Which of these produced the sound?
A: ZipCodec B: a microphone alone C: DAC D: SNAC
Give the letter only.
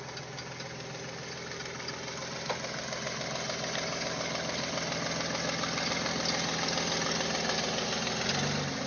B